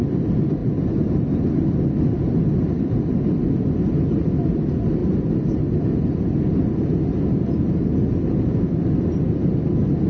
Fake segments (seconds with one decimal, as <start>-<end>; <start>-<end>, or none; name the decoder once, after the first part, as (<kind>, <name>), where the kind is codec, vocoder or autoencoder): none